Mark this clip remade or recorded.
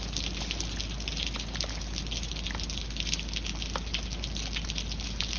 recorded